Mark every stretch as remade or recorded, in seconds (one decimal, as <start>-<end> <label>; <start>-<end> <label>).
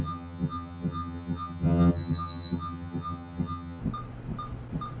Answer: 0.0-3.8 remade; 3.8-5.0 recorded